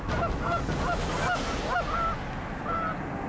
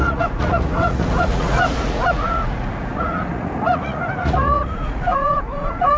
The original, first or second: first